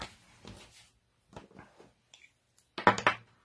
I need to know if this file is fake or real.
real